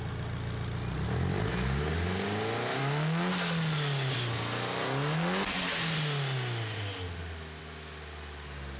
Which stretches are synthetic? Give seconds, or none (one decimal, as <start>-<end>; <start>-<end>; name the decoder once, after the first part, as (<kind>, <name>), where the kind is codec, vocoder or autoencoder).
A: none